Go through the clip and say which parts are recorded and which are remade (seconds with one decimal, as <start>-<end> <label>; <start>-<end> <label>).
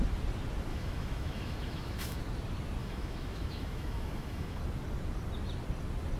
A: 0.0-0.7 recorded; 0.7-2.2 remade; 2.2-2.8 recorded; 2.8-4.6 remade; 4.6-6.2 recorded